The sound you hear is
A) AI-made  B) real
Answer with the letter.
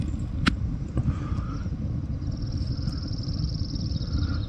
B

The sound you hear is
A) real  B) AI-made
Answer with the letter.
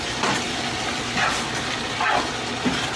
A